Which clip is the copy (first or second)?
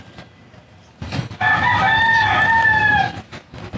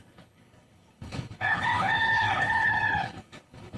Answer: second